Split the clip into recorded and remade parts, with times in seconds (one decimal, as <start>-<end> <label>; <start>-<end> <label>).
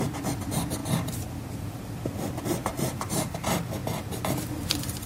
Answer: 0.0-2.6 recorded; 2.6-3.3 remade; 3.3-5.1 recorded